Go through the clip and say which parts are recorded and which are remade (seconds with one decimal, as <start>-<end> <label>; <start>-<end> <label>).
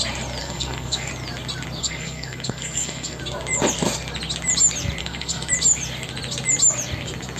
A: 0.0-0.4 recorded; 0.4-1.1 remade; 1.1-1.8 recorded; 1.8-3.2 remade; 3.2-5.0 recorded; 5.0-5.5 remade; 5.5-7.4 recorded